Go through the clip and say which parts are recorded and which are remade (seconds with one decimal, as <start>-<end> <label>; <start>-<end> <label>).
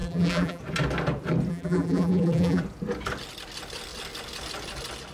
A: 0.0-0.6 remade; 0.6-1.5 recorded; 1.5-2.6 remade; 2.6-5.1 recorded